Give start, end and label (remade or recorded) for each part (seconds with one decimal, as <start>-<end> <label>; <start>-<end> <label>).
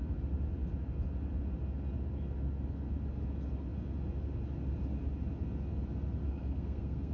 0.0-6.2 recorded; 6.2-7.1 remade